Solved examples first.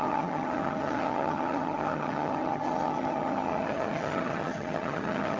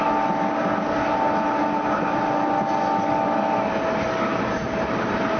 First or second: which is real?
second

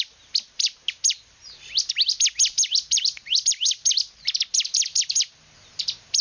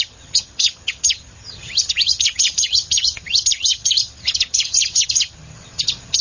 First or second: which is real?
first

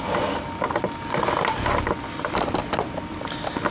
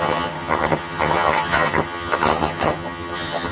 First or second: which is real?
first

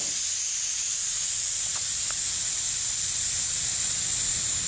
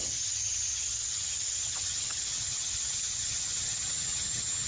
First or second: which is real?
first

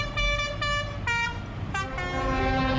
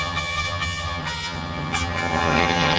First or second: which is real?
first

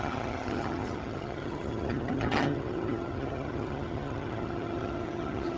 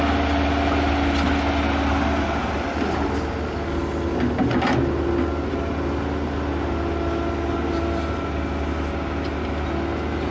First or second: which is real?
second